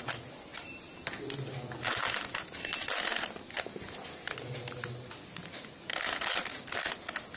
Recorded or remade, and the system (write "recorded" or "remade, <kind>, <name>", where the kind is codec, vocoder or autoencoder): recorded